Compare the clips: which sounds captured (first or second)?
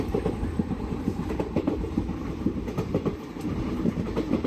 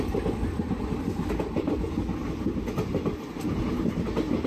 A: second